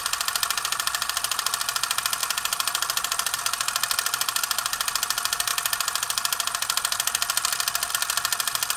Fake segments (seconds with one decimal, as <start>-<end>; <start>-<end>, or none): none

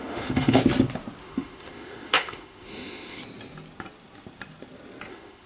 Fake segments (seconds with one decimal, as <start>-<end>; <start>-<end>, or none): 0.0-0.6; 1.2-3.2; 5.1-5.5

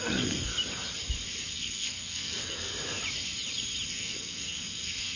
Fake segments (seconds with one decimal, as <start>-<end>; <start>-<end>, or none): 0.0-0.5; 1.5-2.7; 3.9-5.2

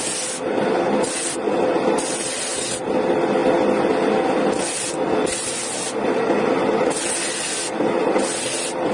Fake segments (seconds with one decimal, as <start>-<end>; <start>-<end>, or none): none

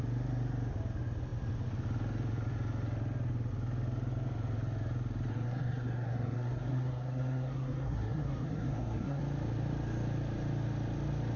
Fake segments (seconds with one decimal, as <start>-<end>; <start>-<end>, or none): 5.3-9.2